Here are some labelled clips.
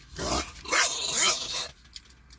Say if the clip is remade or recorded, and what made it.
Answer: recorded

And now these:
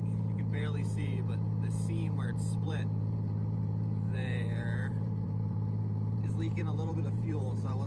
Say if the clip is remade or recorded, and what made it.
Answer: remade, vocoder, BigVGAN v2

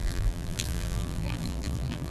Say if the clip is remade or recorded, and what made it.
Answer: remade, vocoder, BigVGAN v2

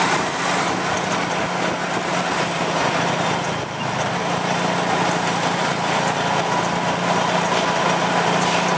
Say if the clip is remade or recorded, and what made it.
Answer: recorded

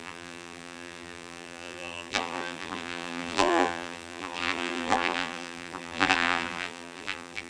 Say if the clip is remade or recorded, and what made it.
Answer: remade, vocoder, BigVGAN v2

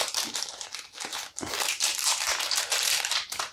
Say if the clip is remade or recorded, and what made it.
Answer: remade, vocoder, BigVGAN v2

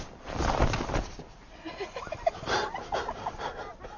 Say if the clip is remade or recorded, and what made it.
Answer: recorded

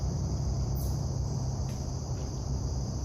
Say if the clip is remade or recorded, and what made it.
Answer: remade, vocoder, BigVGAN v2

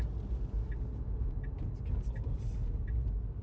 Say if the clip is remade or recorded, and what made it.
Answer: recorded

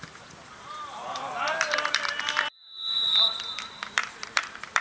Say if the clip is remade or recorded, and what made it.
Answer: remade, vocoder, BigVGAN v2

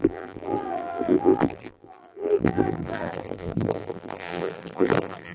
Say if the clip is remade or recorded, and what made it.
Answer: remade, vocoder, BigVGAN v2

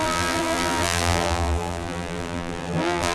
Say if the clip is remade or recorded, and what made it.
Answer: remade, vocoder, BigVGAN v2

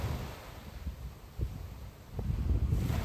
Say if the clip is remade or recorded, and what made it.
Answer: recorded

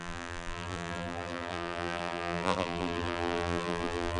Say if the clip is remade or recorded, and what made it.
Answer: remade, vocoder, BigVGAN v2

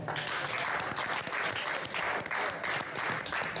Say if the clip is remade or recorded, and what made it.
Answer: recorded